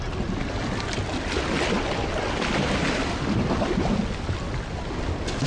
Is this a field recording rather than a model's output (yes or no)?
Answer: yes